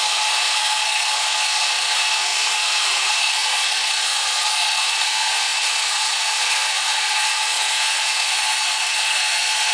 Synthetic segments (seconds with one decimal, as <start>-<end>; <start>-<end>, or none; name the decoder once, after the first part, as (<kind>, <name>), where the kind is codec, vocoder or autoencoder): 0.0-9.7 (codec, SNAC)